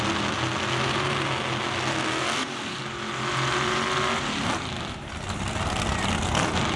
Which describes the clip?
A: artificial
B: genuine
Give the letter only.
B